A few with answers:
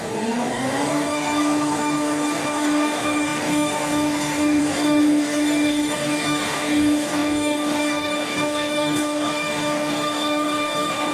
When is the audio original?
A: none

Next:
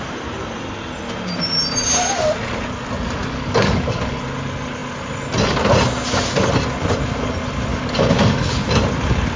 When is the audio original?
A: 0.0-3.2; 4.2-7.7; 8.6-9.4

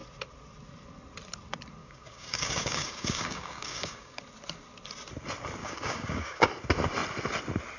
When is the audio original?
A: 0.0-1.8; 4.2-5.6; 6.5-7.8

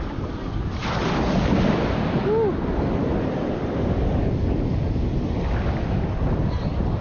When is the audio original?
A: 0.0-7.0

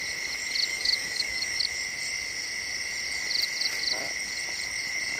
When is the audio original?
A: 0.0-0.7; 1.6-5.2